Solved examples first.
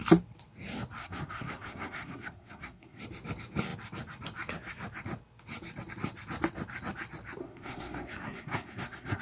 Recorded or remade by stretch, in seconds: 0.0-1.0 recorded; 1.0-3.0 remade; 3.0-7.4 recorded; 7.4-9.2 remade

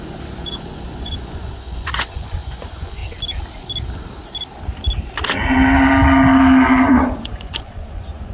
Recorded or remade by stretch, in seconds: 0.0-3.0 remade; 3.0-6.9 recorded; 6.9-8.3 remade